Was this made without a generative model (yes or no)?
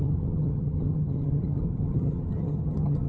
no